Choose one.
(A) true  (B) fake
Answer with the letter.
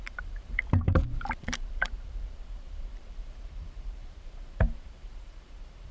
B